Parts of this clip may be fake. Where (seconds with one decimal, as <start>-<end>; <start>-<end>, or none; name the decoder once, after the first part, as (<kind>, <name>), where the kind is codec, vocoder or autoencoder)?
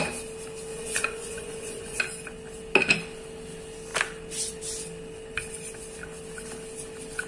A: 0.7-2.0 (vocoder, Vocos)